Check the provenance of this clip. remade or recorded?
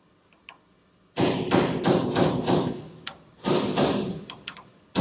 recorded